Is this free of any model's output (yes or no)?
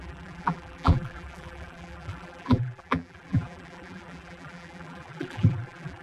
no